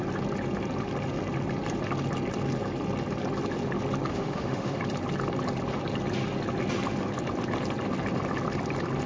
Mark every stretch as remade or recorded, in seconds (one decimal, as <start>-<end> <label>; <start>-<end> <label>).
0.0-4.1 recorded; 4.1-4.8 remade; 4.8-9.1 recorded